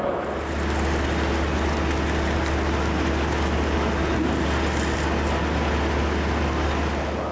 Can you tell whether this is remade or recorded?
recorded